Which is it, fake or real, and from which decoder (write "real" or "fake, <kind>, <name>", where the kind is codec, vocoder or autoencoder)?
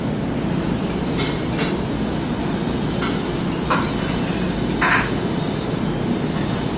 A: real